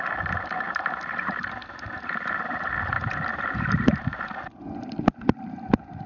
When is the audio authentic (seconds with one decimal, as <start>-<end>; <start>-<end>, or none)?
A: 0.0-6.1